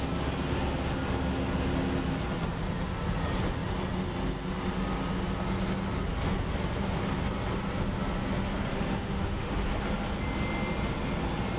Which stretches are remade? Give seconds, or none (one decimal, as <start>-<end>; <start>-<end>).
8.7-9.5